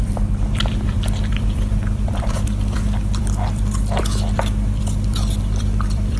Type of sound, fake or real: fake